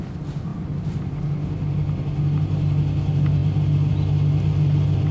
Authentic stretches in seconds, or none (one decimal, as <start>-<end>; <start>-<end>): 0.0-5.1